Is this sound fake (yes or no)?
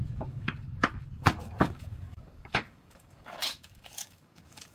yes